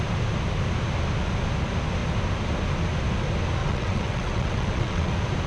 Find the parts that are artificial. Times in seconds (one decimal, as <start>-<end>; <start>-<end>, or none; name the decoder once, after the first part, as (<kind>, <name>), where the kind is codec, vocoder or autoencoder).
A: 3.6-5.1 (vocoder, WaveNeXt)